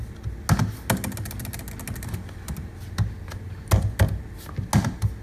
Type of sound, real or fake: real